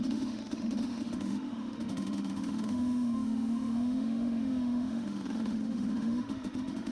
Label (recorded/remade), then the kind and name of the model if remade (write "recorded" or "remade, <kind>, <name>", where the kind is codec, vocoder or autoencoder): remade, autoencoder, DAC-VAE